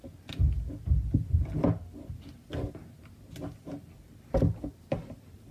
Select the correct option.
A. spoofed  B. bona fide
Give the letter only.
B